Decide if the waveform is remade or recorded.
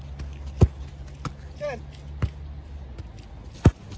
recorded